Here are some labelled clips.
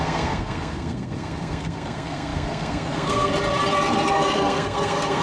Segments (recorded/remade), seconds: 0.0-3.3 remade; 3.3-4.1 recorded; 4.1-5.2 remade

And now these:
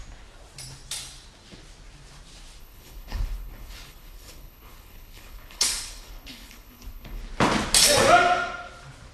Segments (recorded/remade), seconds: 0.0-2.6 recorded; 2.6-7.2 remade; 7.2-9.1 recorded

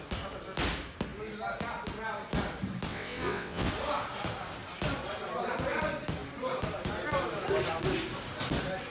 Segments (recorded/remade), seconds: 0.0-2.9 recorded; 2.9-3.7 remade; 3.7-8.9 recorded

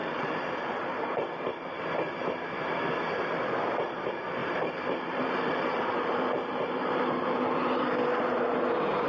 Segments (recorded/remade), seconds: 0.0-1.8 remade; 1.8-4.4 recorded; 4.4-8.6 remade; 8.6-9.1 recorded

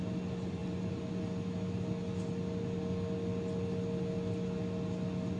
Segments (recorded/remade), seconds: 0.0-0.6 recorded; 0.6-1.1 remade; 1.1-5.4 recorded

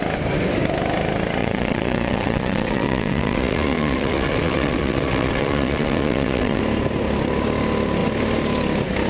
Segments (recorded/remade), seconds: 0.0-1.4 recorded; 1.4-6.6 remade; 6.6-9.1 recorded

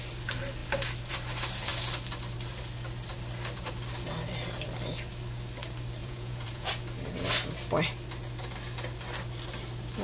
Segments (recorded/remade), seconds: 0.0-6.0 recorded; 6.0-6.7 remade; 6.7-10.0 recorded